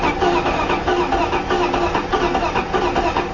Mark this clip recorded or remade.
recorded